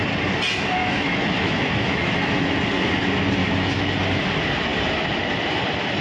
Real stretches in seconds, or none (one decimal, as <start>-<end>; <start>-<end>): 0.0-0.8; 2.1-3.4; 3.9-6.0